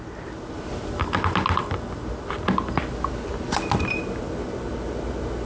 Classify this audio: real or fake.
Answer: real